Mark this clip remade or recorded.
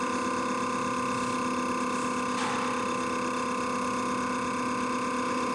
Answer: recorded